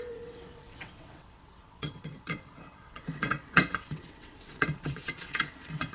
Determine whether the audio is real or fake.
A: fake